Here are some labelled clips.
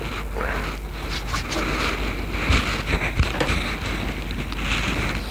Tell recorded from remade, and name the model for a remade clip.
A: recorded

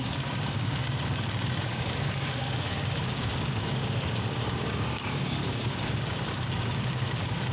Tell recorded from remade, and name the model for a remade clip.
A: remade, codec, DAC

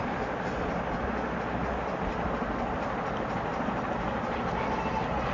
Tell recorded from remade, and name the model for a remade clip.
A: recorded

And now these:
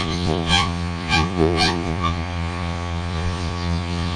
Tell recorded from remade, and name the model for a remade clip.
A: remade, vocoder, Vocos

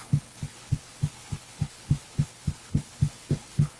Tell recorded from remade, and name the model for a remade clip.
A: remade, codec, HILCodec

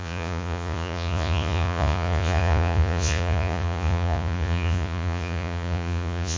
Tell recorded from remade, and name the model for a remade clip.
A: remade, vocoder, Vocos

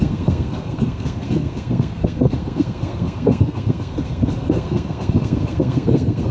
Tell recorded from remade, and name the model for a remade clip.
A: remade, codec, SNAC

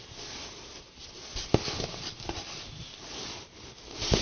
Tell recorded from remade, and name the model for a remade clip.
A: recorded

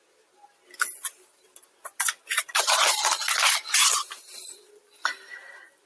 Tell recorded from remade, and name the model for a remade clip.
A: recorded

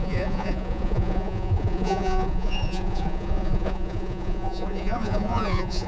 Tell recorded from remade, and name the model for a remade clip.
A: remade, vocoder, Vocos